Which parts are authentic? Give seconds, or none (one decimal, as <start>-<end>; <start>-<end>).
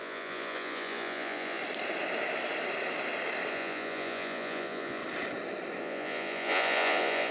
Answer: 1.6-3.5; 5.0-5.8